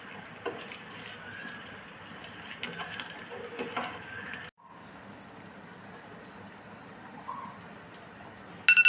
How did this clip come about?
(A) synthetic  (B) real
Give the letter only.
B